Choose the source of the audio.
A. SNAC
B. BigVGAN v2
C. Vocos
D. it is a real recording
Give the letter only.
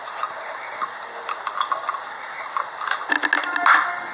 D